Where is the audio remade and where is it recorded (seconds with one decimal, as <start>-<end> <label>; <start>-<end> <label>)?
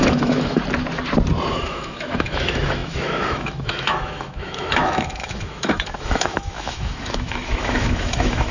0.0-0.6 remade; 0.6-1.5 recorded; 1.5-8.5 remade